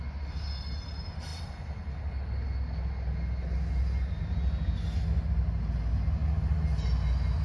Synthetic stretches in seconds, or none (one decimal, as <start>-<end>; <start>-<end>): none